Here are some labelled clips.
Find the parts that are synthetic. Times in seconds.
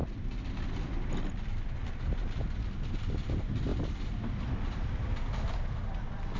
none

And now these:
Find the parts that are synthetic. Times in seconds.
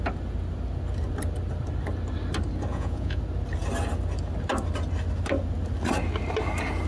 2.7-3.2 (vocoder, Vocos)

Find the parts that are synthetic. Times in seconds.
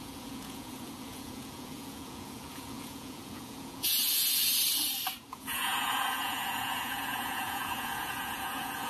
0.0-4.5 (vocoder, Vocos); 5.3-8.9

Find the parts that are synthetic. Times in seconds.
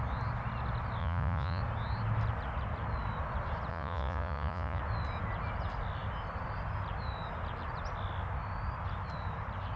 1.0-1.6 (vocoder, Vocos); 3.7-4.8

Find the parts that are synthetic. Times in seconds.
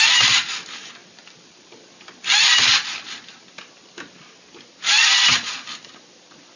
none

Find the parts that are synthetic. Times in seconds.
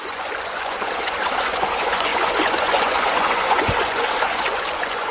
0.0-5.1 (vocoder, Vocos)